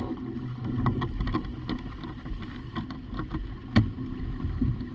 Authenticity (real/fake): real